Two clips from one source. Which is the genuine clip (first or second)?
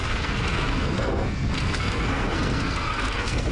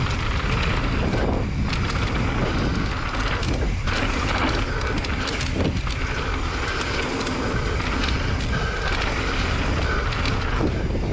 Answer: second